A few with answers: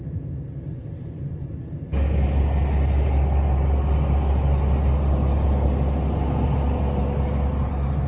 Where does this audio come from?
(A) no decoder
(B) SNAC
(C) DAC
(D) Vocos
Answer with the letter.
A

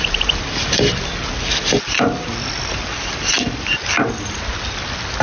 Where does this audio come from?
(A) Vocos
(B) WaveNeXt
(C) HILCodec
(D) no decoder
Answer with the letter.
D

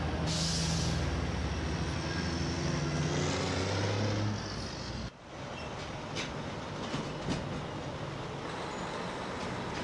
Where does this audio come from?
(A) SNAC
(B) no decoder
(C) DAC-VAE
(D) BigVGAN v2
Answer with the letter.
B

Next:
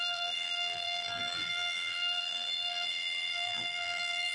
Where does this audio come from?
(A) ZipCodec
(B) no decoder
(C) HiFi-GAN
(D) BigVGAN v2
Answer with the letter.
D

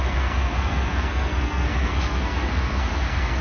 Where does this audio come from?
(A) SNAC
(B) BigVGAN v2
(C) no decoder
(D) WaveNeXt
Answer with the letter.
A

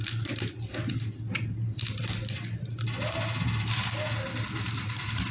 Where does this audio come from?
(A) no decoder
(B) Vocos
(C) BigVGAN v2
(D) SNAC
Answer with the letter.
A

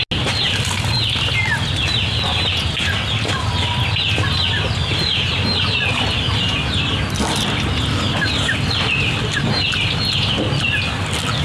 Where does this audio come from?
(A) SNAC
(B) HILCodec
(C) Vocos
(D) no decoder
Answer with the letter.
D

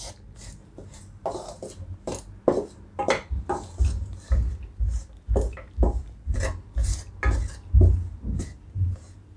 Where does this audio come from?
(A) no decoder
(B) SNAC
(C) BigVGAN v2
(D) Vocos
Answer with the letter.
A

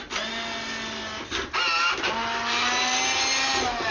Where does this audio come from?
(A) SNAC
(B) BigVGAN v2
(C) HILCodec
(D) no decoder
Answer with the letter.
D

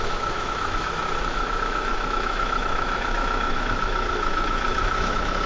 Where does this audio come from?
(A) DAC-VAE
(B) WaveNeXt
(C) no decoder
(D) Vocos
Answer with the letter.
A